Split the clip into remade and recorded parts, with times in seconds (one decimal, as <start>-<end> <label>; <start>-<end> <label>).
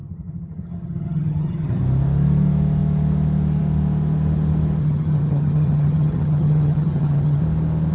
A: 0.0-1.8 remade; 1.8-4.8 recorded; 4.8-7.4 remade; 7.4-7.9 recorded